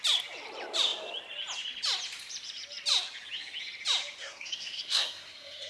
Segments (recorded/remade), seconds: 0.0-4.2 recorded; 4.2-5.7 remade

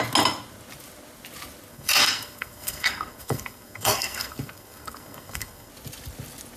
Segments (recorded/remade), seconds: 0.0-1.7 recorded; 1.7-5.7 remade; 5.7-6.6 recorded

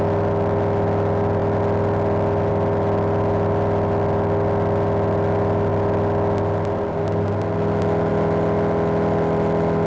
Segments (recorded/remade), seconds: 0.0-9.9 recorded

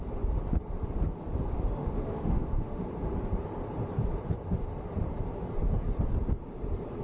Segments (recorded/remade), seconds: 0.0-1.5 recorded; 1.5-2.8 remade; 2.8-7.0 recorded

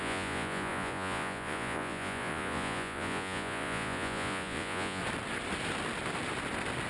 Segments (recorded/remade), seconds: 0.0-5.0 remade; 5.0-6.9 recorded

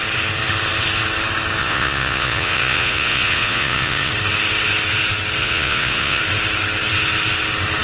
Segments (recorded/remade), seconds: 0.0-1.6 recorded; 1.6-4.1 remade; 4.1-5.4 recorded; 5.4-6.2 remade; 6.2-7.8 recorded

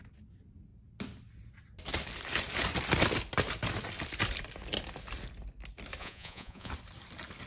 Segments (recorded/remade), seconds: 0.0-6.0 recorded; 6.0-6.7 remade; 6.7-7.5 recorded

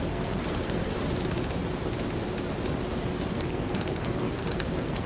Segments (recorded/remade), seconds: 0.0-0.9 remade; 0.9-3.3 recorded; 3.3-5.1 remade